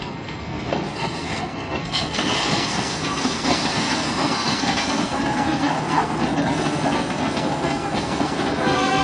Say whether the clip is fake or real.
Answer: fake